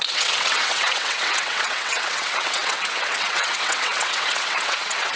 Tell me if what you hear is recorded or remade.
remade